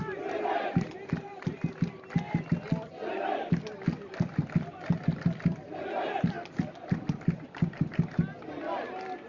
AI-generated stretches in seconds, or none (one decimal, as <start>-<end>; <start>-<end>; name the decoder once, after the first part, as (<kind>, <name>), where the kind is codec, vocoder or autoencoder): 0.0-1.7 (vocoder, BigVGAN v2)